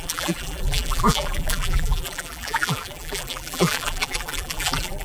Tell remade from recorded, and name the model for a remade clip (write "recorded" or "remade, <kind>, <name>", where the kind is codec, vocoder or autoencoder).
remade, vocoder, BigVGAN v2